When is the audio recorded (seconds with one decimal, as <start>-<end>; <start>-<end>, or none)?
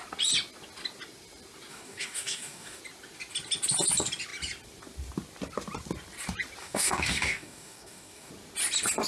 0.0-1.7; 2.8-6.6; 8.3-9.1